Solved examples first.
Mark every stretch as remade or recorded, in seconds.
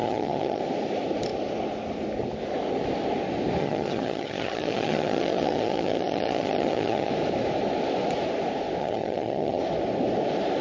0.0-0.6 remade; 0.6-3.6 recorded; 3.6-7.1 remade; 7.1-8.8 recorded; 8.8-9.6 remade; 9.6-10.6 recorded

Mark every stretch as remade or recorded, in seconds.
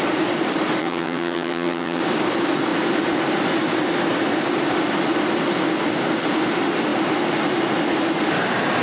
0.0-0.8 recorded; 0.8-2.0 remade; 2.0-8.8 recorded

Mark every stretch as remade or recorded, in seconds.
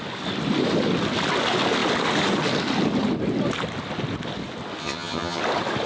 0.0-4.8 recorded; 4.8-5.4 remade; 5.4-5.9 recorded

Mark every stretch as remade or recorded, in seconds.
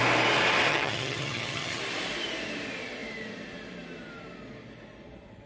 0.0-0.7 recorded; 0.7-1.8 remade; 1.8-5.5 recorded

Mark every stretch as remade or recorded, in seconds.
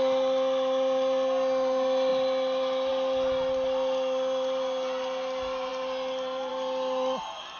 0.0-7.6 recorded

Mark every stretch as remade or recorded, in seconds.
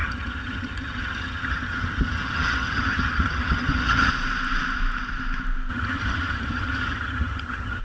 0.0-4.1 remade; 4.1-5.7 recorded; 5.7-7.8 remade